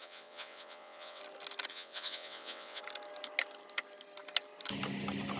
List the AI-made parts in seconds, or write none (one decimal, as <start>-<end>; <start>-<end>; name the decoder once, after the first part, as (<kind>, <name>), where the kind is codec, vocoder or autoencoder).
0.0-1.2 (vocoder, WaveNeXt); 1.7-2.8

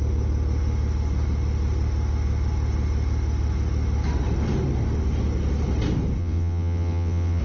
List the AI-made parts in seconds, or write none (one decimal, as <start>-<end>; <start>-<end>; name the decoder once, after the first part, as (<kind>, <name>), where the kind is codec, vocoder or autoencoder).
6.2-7.4 (vocoder, WaveNeXt)

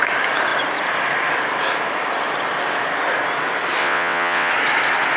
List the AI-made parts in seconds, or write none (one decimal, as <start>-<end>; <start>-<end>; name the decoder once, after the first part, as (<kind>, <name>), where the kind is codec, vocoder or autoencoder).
3.8-4.5 (vocoder, WaveNeXt)